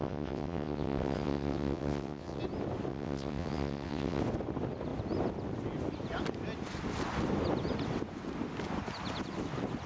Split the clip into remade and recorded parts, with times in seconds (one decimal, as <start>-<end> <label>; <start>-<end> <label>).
0.0-2.4 remade; 2.4-2.9 recorded; 2.9-4.2 remade; 4.2-9.9 recorded

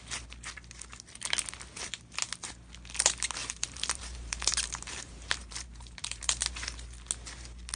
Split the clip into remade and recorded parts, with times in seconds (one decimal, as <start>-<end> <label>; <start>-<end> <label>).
0.0-3.4 recorded; 3.4-6.5 remade; 6.5-7.8 recorded

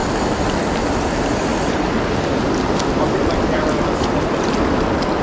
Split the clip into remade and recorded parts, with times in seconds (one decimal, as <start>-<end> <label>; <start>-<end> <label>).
0.0-5.2 recorded

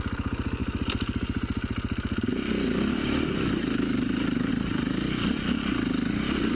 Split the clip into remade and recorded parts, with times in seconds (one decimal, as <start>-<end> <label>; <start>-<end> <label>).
0.0-6.5 recorded

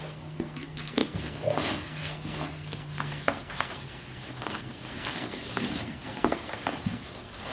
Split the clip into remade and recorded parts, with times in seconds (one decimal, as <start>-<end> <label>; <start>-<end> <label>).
0.0-7.5 remade

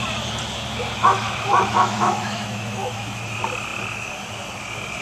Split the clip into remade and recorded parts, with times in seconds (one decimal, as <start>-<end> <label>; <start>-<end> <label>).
0.0-1.0 recorded; 1.0-3.2 remade; 3.2-5.0 recorded